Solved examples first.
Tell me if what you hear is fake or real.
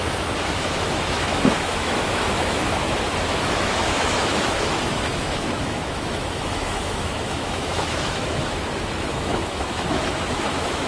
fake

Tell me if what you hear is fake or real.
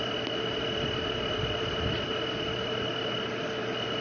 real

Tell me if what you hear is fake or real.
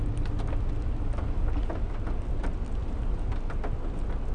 real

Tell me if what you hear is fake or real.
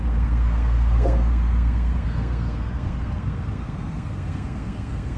fake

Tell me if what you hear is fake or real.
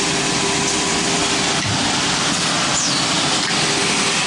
real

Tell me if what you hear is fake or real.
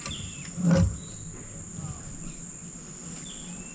real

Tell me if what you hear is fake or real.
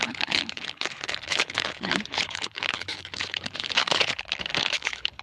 fake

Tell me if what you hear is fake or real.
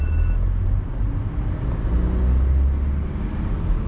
real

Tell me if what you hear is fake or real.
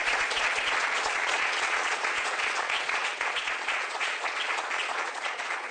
fake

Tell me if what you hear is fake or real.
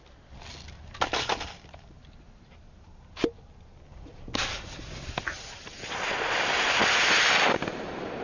real